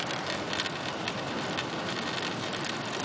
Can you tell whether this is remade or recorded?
remade